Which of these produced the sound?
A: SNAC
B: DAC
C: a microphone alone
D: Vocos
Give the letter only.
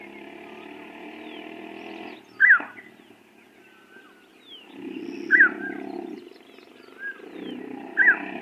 C